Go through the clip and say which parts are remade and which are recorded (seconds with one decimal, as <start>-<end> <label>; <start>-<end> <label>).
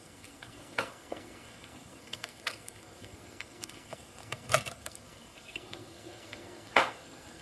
0.0-7.4 remade